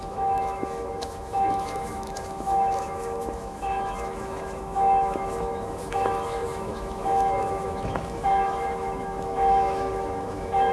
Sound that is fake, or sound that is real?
fake